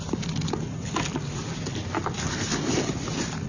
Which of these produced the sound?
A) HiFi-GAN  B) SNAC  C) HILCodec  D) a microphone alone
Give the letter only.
D